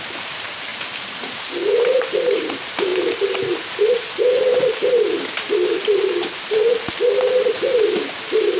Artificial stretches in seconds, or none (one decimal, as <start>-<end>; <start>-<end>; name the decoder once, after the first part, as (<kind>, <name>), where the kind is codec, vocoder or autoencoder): 0.0-6.6 (vocoder, BigVGAN v2); 7.6-8.6